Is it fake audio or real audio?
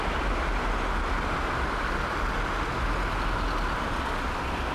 real